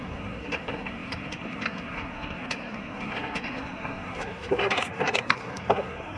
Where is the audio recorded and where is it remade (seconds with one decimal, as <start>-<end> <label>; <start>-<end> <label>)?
0.0-6.2 remade